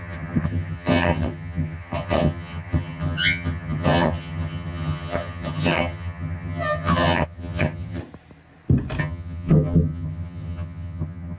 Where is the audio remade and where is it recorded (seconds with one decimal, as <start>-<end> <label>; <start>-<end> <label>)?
0.0-8.0 remade; 8.0-9.0 recorded; 9.0-11.4 remade